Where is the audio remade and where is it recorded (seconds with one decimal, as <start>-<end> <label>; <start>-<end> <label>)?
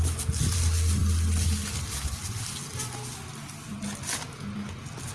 0.0-5.1 recorded